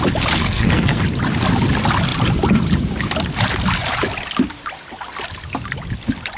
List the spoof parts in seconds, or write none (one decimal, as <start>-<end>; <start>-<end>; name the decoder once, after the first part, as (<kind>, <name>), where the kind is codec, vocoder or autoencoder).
0.4-1.0 (codec, SNAC)